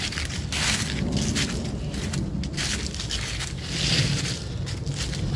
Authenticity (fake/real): real